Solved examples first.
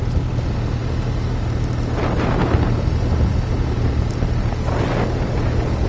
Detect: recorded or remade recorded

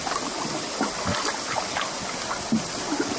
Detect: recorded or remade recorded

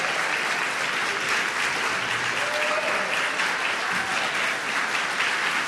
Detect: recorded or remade recorded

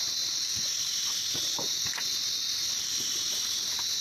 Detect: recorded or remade remade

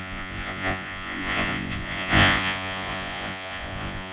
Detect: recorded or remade remade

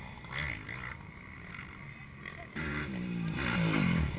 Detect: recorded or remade recorded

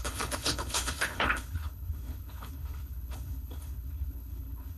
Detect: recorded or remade remade